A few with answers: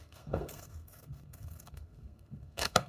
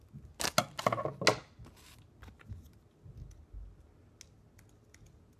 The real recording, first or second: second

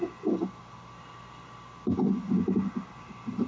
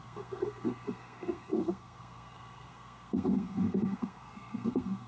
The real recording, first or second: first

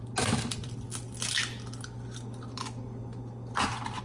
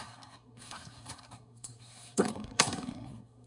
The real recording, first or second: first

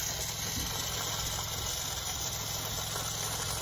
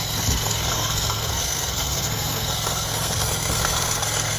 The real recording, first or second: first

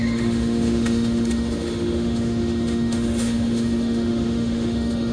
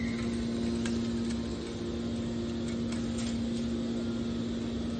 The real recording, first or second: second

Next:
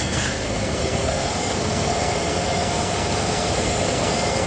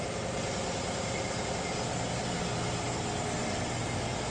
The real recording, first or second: second